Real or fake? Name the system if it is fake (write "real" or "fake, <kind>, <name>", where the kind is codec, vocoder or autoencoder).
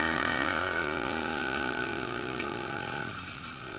fake, vocoder, Vocos